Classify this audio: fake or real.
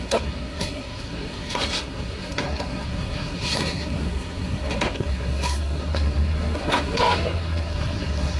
fake